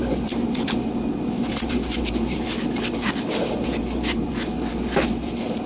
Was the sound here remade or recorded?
recorded